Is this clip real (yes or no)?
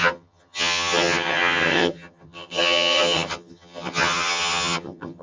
no